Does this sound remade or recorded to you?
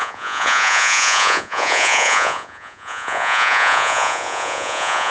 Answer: remade